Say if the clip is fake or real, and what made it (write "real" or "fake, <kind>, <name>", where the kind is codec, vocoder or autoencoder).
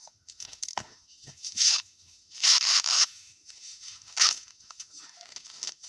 fake, autoencoder, DAC-VAE